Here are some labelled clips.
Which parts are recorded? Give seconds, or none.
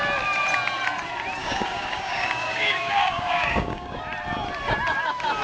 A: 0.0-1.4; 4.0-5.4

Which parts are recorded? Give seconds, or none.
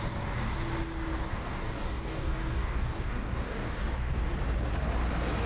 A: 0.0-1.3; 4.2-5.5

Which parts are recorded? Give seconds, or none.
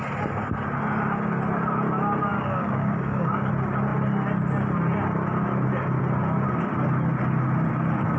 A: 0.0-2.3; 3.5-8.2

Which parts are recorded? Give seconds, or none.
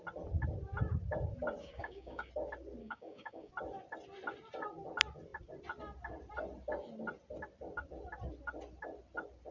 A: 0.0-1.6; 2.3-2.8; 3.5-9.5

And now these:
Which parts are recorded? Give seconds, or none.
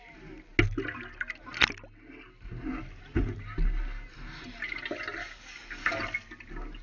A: 0.0-5.2; 6.0-6.8